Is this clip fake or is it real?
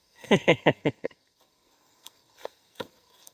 fake